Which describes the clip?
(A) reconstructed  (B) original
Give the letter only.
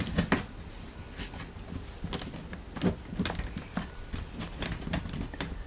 B